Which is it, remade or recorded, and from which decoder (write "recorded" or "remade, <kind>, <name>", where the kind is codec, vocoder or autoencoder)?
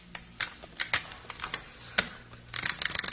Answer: recorded